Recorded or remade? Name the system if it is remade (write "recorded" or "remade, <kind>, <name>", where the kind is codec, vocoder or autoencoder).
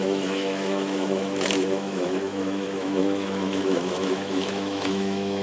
remade, autoencoder, DAC-VAE